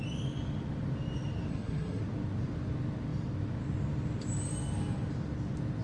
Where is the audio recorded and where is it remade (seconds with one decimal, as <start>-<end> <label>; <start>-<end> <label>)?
0.0-1.5 recorded; 1.5-2.0 remade; 2.0-5.8 recorded